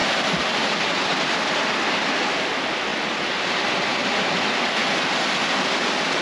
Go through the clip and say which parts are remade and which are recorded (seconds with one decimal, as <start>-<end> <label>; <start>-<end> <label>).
0.0-1.1 recorded; 1.1-1.8 remade; 1.8-2.9 recorded; 2.9-3.5 remade; 3.5-3.9 recorded; 3.9-6.2 remade